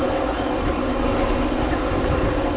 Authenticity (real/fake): real